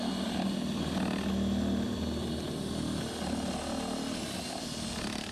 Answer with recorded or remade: recorded